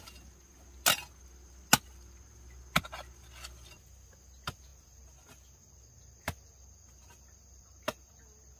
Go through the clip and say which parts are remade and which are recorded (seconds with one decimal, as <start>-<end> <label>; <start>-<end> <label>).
0.0-8.6 recorded